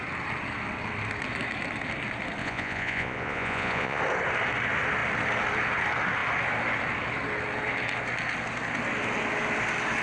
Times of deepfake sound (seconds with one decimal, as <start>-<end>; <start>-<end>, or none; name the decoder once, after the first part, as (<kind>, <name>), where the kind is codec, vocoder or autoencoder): 2.4-4.0 (vocoder, Vocos)